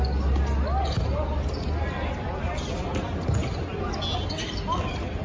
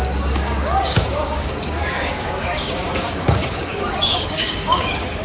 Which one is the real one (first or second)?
first